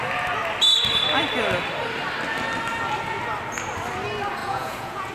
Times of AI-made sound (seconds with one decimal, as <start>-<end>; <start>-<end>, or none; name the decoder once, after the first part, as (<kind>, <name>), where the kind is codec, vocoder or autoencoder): 4.4-5.1 (vocoder, Vocos)